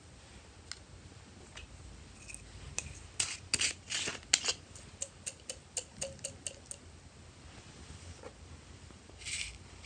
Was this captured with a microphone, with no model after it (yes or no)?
yes